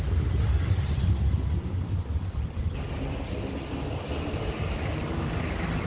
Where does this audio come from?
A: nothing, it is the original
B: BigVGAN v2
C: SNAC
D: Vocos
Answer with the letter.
A